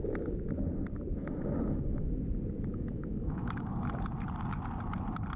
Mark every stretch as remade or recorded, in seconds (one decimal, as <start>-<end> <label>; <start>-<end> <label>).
0.0-1.2 recorded; 1.2-2.2 remade; 2.2-2.7 recorded; 2.7-3.7 remade; 3.7-5.4 recorded